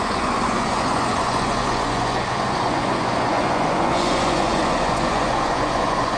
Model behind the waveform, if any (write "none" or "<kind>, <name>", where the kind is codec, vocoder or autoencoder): vocoder, Vocos